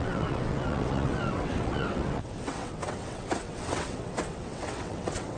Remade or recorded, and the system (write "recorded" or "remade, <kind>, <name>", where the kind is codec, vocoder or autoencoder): remade, vocoder, WaveNeXt